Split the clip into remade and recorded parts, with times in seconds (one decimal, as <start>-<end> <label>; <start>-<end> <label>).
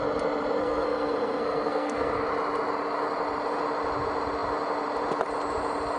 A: 0.0-0.6 recorded; 0.6-2.2 remade; 2.2-6.0 recorded